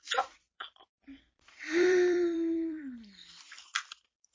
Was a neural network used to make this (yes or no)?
yes